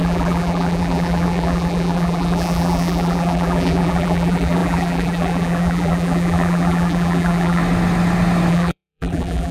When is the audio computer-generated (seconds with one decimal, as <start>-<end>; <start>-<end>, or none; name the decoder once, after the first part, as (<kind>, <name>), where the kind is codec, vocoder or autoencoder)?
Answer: 0.0-7.6 (vocoder, BigVGAN v2); 8.5-9.5